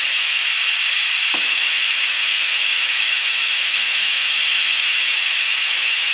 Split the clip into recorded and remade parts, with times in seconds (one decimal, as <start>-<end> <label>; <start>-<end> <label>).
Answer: 0.0-0.5 remade; 0.5-1.4 recorded; 1.4-6.1 remade